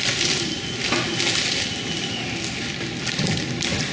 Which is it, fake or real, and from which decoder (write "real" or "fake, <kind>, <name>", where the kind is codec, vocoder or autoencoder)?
real